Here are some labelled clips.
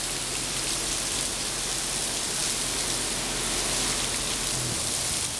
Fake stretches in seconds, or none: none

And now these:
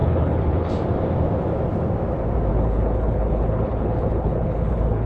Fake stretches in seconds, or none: 0.0-0.7; 2.5-5.1

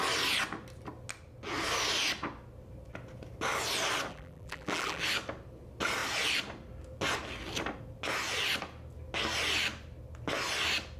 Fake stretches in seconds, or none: 4.1-5.0

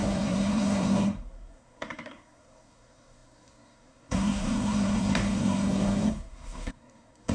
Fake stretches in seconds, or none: 0.0-7.3

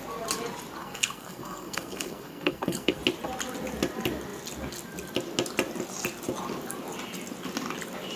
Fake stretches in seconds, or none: 0.8-3.0

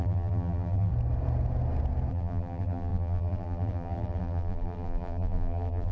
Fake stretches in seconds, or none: 0.0-0.9; 2.1-5.9

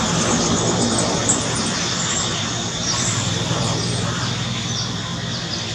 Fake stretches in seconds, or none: 1.2-4.3